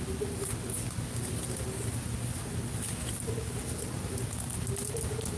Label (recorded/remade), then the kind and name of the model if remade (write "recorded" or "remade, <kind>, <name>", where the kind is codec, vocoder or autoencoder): recorded